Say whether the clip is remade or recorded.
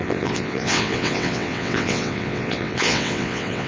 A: remade